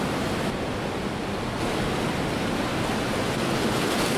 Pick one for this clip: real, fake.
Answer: real